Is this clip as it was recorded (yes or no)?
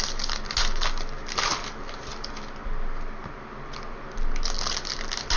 yes